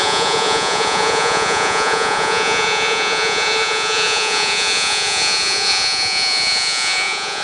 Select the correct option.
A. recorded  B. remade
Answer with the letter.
B